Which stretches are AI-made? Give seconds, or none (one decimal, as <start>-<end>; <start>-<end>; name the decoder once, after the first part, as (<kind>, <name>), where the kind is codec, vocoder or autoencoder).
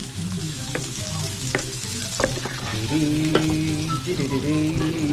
0.0-2.0 (autoencoder, DAC-VAE); 2.7-3.3